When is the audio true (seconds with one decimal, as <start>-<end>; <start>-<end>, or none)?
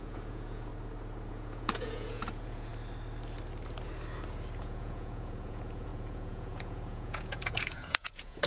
0.7-1.3; 2.7-4.6